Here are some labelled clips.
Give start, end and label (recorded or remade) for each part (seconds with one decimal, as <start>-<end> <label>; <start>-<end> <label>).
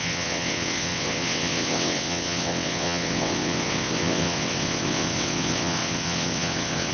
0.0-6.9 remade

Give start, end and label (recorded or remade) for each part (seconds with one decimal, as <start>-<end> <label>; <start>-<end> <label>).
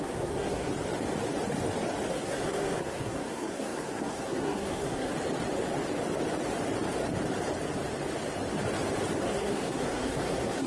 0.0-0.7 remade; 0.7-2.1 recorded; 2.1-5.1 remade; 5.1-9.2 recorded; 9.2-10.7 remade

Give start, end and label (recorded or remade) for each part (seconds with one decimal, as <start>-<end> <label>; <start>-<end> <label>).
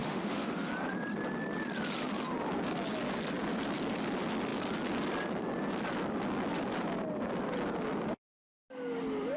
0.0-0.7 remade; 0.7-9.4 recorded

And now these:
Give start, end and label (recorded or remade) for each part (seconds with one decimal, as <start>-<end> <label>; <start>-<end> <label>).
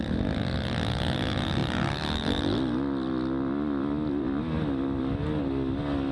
0.0-6.1 recorded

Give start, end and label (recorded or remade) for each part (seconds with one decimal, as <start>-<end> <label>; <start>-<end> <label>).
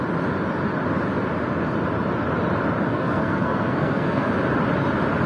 0.0-2.9 recorded; 2.9-4.3 remade; 4.3-5.3 recorded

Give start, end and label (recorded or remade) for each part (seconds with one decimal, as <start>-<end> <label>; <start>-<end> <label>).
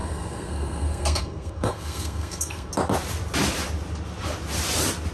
0.0-2.7 remade; 2.7-5.1 recorded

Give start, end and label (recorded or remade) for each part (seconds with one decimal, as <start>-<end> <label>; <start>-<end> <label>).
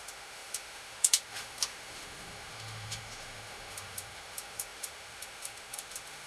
0.0-6.3 remade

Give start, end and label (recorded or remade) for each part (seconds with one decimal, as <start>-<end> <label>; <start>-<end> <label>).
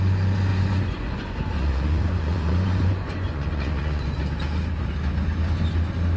0.0-0.5 recorded; 0.5-4.2 remade; 4.2-6.2 recorded